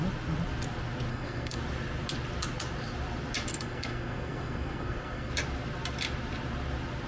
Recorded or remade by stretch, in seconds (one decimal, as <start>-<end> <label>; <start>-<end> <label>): 0.0-1.1 recorded; 1.1-1.6 remade; 1.6-3.5 recorded; 3.5-5.3 remade; 5.3-7.1 recorded